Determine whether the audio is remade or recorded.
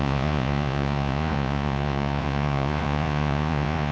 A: remade